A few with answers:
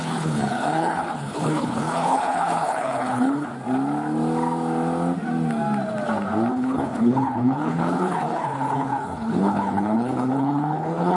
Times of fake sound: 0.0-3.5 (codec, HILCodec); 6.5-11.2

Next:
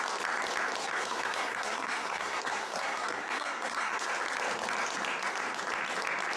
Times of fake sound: 0.8-4.1 (codec, SNAC)

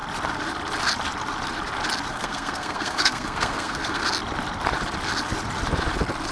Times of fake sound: 2.1-4.0 (codec, SNAC)

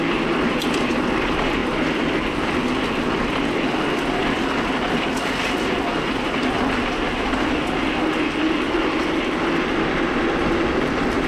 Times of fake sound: none